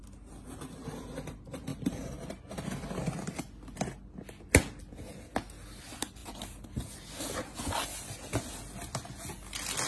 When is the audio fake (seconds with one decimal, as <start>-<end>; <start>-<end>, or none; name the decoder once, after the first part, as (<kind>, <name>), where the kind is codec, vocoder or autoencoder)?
none